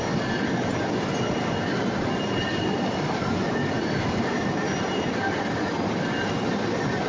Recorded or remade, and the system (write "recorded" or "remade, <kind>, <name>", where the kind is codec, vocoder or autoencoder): remade, vocoder, BigVGAN v2